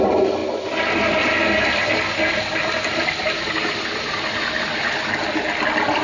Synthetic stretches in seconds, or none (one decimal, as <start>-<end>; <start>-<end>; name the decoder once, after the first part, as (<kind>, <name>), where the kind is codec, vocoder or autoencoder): none